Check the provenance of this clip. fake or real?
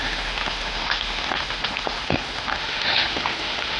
fake